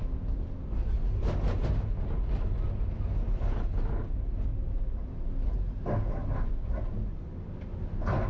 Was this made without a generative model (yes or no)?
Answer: yes